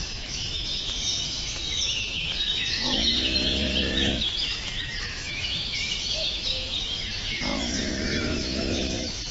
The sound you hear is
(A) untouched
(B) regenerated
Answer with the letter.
B